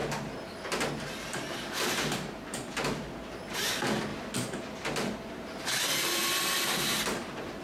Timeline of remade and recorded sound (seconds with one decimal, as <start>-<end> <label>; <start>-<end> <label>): 0.0-4.1 recorded; 4.1-6.4 remade; 6.4-7.6 recorded